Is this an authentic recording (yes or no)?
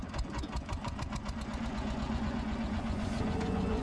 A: no